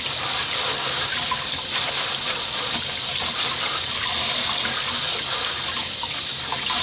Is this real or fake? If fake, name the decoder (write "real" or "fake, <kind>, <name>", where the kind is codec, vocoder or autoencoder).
real